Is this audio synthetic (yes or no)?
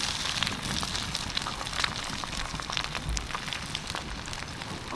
no